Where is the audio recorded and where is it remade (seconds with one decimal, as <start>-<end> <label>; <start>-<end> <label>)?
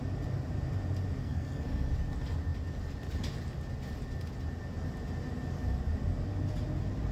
0.0-1.2 recorded; 1.2-1.9 remade; 1.9-7.1 recorded